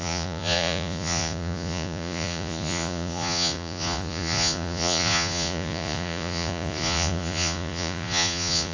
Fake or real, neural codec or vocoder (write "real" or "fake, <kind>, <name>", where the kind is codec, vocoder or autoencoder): fake, vocoder, Vocos